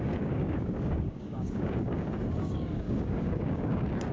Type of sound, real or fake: fake